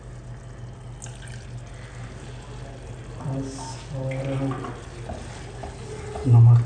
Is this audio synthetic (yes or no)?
no